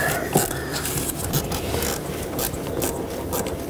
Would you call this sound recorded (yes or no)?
yes